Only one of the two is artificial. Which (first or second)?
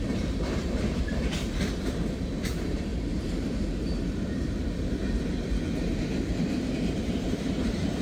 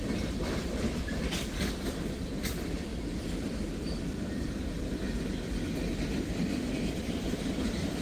first